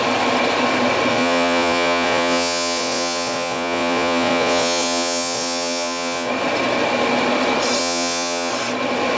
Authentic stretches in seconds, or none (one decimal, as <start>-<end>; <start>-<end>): 0.0-1.1; 6.3-7.8; 8.5-9.2

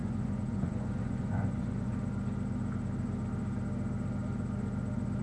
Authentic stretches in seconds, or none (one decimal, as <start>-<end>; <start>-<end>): 1.9-5.2

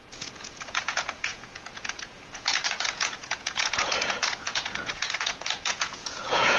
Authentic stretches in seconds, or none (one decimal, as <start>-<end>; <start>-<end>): none

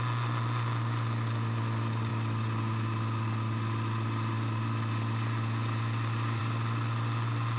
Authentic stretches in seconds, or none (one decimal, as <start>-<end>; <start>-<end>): 0.0-7.6

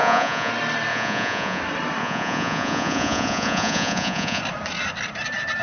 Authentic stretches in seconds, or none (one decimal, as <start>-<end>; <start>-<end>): 0.5-0.9; 1.6-2.0; 4.4-5.6

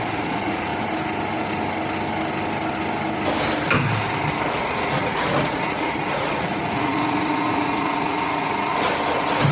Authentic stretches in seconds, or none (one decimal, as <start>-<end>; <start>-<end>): 0.7-4.6; 8.7-9.5